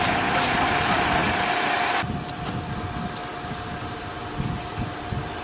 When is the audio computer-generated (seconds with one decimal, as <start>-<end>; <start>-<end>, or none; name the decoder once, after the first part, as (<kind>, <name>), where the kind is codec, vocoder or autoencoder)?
none